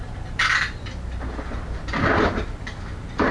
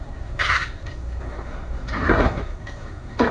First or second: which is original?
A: first